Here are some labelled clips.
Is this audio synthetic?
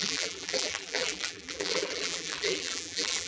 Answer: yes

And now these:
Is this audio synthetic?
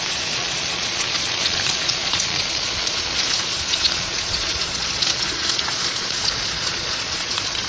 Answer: yes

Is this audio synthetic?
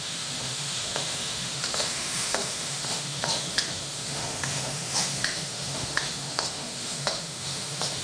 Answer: yes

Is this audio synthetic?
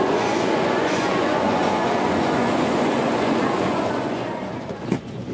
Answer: yes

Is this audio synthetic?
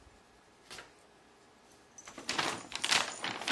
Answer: no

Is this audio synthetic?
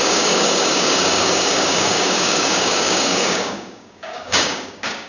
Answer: yes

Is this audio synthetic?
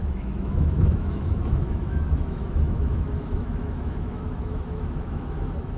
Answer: yes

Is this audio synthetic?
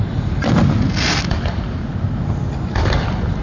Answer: no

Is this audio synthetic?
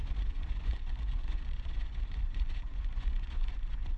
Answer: yes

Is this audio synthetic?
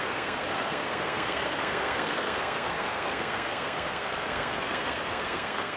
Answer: yes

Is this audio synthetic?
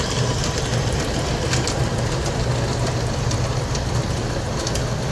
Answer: no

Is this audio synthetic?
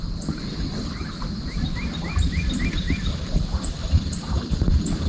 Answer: no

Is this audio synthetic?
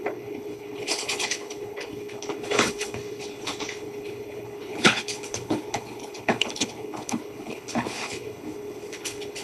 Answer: yes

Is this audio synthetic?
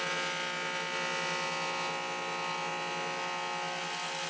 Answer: no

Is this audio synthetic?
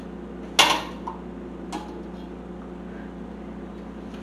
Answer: no